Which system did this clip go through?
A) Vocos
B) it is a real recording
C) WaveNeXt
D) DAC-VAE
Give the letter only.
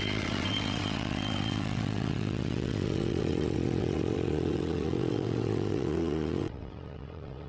C